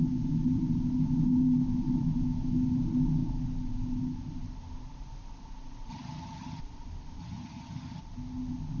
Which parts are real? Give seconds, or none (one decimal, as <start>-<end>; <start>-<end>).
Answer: 0.0-5.9; 6.6-7.2; 8.0-8.8